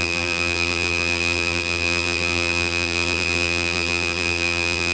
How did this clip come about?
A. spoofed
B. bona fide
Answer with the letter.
A